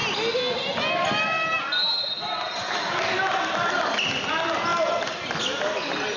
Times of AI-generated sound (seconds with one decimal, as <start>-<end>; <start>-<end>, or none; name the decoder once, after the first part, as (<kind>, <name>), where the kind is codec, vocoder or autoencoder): none